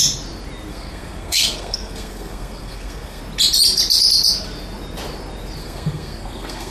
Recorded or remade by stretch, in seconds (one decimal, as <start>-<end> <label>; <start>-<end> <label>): 0.0-0.7 recorded; 0.7-3.2 remade; 3.2-5.6 recorded; 5.6-6.7 remade